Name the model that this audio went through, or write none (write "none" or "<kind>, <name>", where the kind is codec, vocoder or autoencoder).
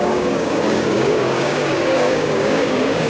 codec, DAC